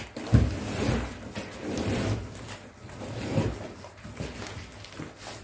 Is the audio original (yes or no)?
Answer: yes